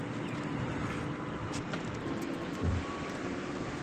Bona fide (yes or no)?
no